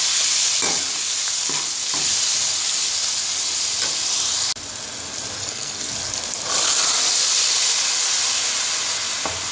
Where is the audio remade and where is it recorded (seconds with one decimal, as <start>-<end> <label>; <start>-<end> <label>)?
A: 0.0-5.4 recorded; 5.4-5.9 remade; 5.9-9.5 recorded